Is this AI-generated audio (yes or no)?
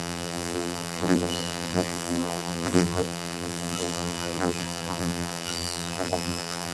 yes